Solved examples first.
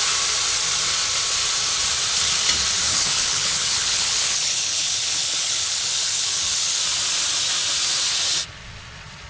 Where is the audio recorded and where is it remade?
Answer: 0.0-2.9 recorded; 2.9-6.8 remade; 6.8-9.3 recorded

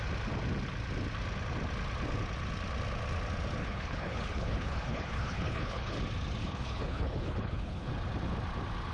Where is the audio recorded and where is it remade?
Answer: 0.0-3.6 recorded; 3.6-6.0 remade; 6.0-6.4 recorded; 6.4-7.9 remade; 7.9-8.9 recorded

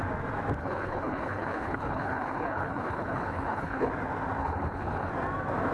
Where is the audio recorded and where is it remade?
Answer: 0.0-0.6 recorded; 0.6-3.9 remade; 3.9-4.4 recorded; 4.4-5.1 remade; 5.1-5.7 recorded

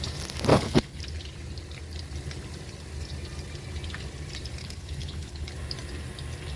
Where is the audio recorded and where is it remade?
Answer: 0.0-0.5 recorded; 0.5-1.0 remade; 1.0-4.6 recorded; 4.6-5.5 remade; 5.5-6.6 recorded

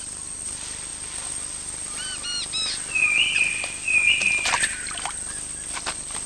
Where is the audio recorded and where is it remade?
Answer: 0.0-6.3 recorded

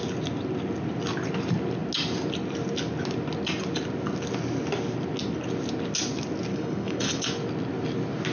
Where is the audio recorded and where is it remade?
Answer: 0.0-6.5 recorded; 6.5-7.2 remade; 7.2-8.3 recorded